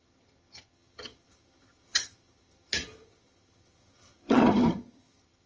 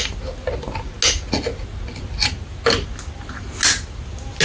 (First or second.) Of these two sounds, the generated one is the first